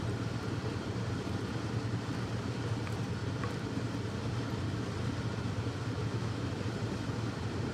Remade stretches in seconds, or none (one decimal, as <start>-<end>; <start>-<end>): 6.0-6.6